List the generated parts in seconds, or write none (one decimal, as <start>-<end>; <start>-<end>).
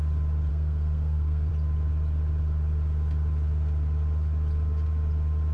0.5-1.5